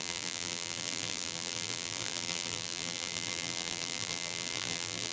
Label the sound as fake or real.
fake